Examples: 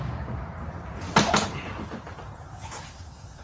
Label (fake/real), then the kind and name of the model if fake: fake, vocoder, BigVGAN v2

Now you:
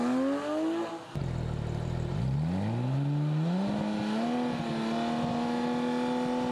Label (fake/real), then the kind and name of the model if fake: real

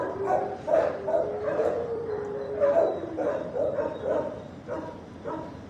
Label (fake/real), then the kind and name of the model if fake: fake, vocoder, BigVGAN v2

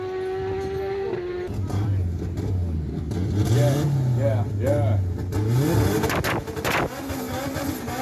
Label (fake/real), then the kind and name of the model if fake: real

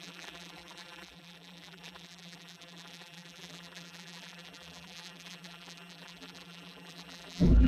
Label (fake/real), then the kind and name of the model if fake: fake, vocoder, BigVGAN v2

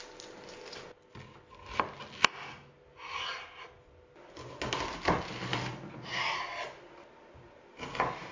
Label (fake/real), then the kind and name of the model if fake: real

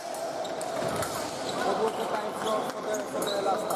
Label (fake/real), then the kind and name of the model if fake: real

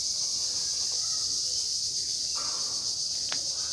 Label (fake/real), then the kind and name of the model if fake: real